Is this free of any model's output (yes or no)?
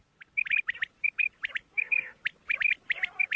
yes